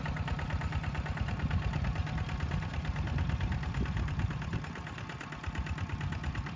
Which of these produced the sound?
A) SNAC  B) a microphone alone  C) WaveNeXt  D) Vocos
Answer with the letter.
B